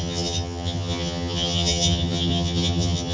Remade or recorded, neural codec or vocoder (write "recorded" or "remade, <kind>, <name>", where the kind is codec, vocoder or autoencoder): remade, vocoder, HiFi-GAN